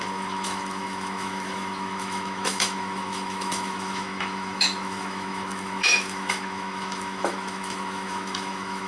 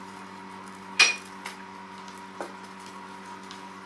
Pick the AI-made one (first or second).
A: first